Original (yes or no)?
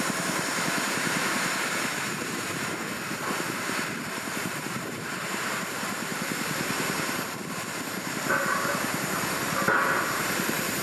no